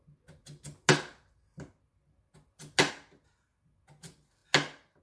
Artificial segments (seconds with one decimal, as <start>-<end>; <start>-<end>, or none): none